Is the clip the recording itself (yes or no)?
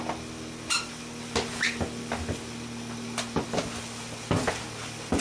yes